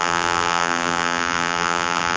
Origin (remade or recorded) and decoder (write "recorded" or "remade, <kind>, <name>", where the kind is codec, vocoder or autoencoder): remade, vocoder, BigVGAN v2